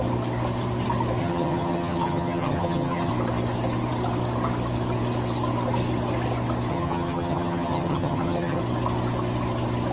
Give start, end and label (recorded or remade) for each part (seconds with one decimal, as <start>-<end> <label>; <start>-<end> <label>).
0.0-1.2 recorded; 1.2-3.1 remade; 3.1-6.7 recorded; 6.7-8.6 remade; 8.6-9.9 recorded